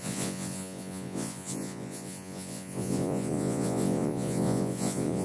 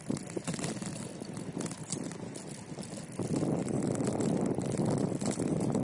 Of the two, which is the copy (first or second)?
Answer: first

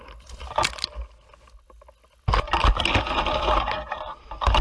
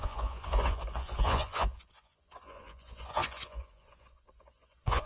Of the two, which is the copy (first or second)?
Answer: second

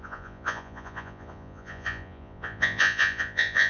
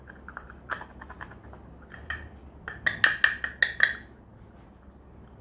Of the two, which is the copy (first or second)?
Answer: first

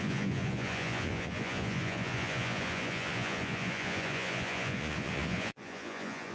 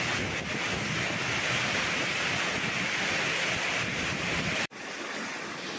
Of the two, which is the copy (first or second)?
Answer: first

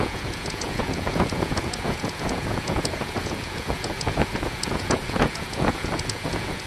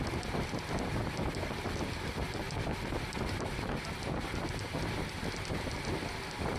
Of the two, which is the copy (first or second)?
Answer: first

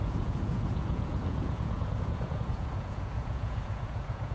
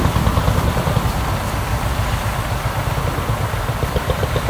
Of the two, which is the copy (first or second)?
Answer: first